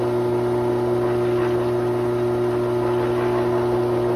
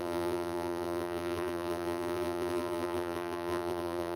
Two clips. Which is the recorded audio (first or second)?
first